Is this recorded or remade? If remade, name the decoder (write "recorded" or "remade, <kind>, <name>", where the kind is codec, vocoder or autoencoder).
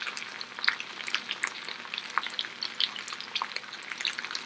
recorded